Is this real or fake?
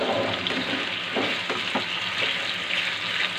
real